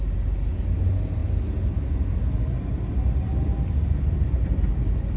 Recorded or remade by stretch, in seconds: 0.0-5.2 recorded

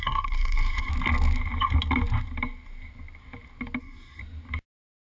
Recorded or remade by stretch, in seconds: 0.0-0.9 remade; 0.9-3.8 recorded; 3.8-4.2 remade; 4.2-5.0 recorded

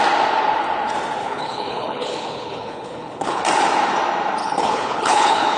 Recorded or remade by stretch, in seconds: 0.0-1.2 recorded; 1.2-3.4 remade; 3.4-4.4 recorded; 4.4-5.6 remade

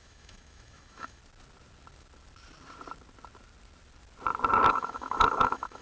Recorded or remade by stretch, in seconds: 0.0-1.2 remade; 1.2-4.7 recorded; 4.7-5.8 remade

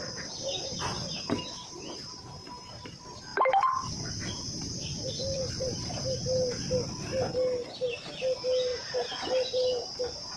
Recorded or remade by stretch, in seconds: 0.0-10.4 recorded

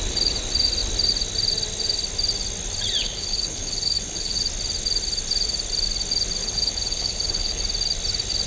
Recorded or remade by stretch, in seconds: 0.0-3.0 recorded; 3.0-4.4 remade; 4.4-6.4 recorded; 6.4-7.6 remade; 7.6-8.5 recorded

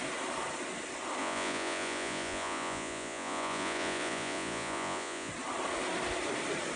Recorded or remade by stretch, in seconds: 0.0-1.2 recorded; 1.2-5.3 remade; 5.3-6.8 recorded